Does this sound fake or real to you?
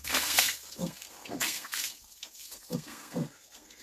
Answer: fake